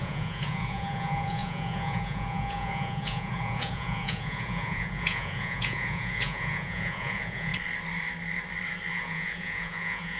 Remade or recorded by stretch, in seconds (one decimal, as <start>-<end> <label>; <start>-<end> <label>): 0.0-7.5 remade; 7.5-8.9 recorded; 8.9-10.2 remade